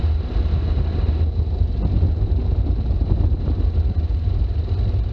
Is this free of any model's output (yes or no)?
yes